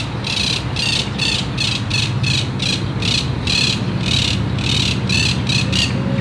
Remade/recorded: recorded